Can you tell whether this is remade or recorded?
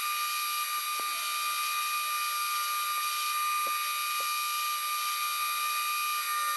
recorded